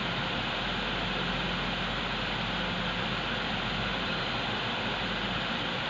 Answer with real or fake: real